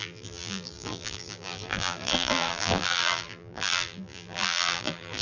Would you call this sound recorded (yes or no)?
no